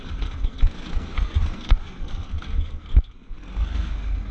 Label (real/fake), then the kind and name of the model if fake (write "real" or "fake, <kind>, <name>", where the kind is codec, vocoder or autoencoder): fake, codec, SNAC